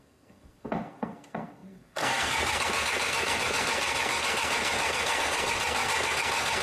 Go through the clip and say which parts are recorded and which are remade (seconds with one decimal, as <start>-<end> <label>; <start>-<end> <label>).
0.0-6.6 remade